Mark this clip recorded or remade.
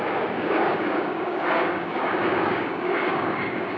remade